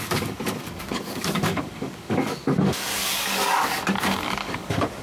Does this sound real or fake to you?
fake